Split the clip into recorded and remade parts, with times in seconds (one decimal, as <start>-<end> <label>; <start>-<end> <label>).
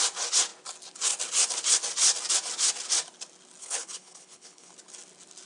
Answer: 0.0-3.6 recorded; 3.6-4.7 remade; 4.7-5.5 recorded